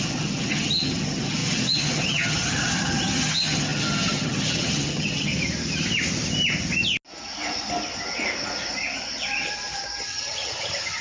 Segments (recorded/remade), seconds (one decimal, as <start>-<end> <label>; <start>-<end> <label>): 0.0-5.3 remade; 5.3-10.0 recorded; 10.0-11.0 remade